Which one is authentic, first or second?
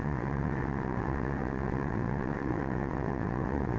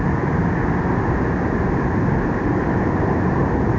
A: second